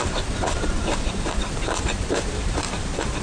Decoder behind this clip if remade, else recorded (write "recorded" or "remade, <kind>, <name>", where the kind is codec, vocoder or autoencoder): remade, vocoder, BigVGAN v2